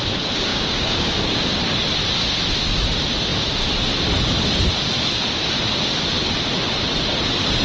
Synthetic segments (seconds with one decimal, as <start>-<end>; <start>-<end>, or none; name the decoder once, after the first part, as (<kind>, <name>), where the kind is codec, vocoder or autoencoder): 0.5-1.4 (codec, DAC)